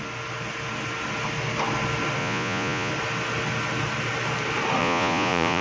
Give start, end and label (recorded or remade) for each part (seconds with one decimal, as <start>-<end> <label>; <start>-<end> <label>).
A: 0.0-2.2 recorded; 2.2-2.9 remade; 2.9-4.8 recorded; 4.8-5.6 remade